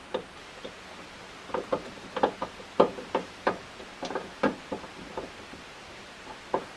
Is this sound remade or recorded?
recorded